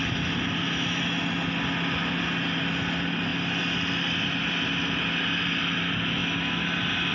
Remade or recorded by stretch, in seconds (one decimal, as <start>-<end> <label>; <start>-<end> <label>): 0.0-7.1 recorded